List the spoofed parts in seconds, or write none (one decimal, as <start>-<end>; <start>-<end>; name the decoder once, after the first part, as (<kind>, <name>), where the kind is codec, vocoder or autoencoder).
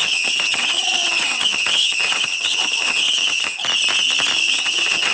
0.0-3.6 (vocoder, HiFi-GAN); 4.4-5.1